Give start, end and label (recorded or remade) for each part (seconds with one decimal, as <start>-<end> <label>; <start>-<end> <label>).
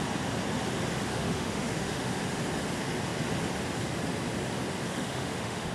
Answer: 0.0-1.1 recorded; 1.1-2.4 remade; 2.4-4.9 recorded; 4.9-5.7 remade